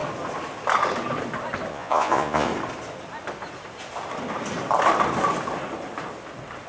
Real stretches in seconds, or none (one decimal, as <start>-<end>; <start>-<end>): 0.0-1.7; 2.5-6.7